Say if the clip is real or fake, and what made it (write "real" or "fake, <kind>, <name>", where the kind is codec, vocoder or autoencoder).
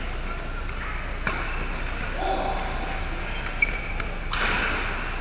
real